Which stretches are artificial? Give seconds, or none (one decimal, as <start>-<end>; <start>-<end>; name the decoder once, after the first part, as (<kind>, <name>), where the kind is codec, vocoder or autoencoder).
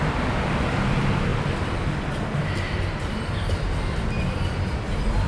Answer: 0.0-1.3 (vocoder, BigVGAN v2); 2.9-5.3